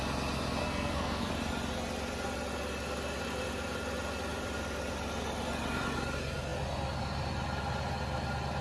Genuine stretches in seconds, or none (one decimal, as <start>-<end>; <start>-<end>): 0.0-0.6; 1.3-8.6